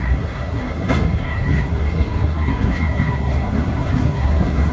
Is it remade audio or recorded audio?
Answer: remade